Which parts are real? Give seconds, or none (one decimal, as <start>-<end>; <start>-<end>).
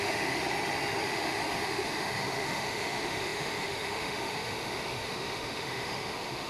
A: 0.4-1.0